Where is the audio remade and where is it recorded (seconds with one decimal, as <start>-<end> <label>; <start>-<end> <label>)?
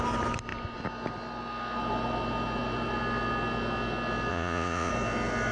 0.0-4.3 recorded; 4.3-4.9 remade; 4.9-5.5 recorded